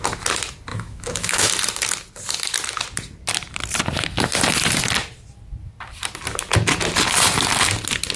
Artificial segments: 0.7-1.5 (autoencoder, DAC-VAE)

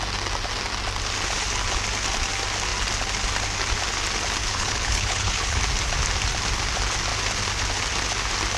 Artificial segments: 4.4-5.6 (codec, HILCodec)

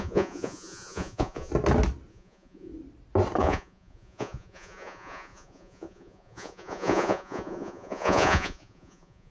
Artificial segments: 0.0-1.5 (vocoder, Vocos); 2.1-2.7; 3.4-9.3

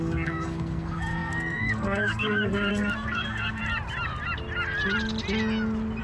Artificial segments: 0.0-3.6 (codec, SNAC)

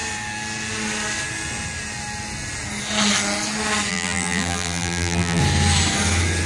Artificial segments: 3.9-5.4 (vocoder, BigVGAN v2)

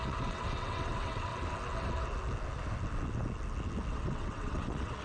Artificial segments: 0.0-1.3 (vocoder, WaveNeXt); 3.9-5.0

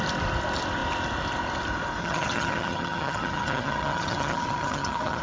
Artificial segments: 2.0-5.2 (vocoder, HiFi-GAN)

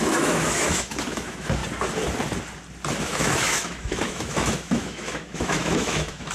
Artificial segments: 0.0-1.6 (autoencoder, DAC-VAE); 3.0-6.3